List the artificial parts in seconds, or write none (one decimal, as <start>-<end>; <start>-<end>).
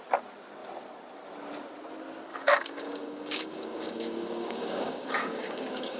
2.3-6.0